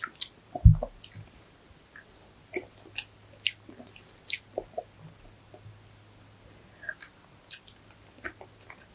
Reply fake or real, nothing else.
real